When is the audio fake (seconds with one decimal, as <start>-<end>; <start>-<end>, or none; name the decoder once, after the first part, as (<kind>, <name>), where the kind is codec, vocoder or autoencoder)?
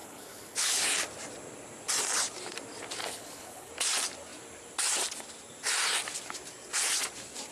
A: 0.0-1.0 (codec, HILCodec); 3.0-3.7